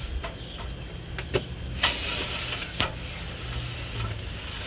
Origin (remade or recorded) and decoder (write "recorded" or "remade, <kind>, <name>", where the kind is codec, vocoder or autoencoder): recorded